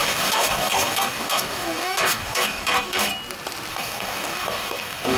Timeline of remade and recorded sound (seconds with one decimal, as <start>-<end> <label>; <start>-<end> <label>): 0.0-3.1 remade; 3.1-3.7 recorded; 3.7-5.2 remade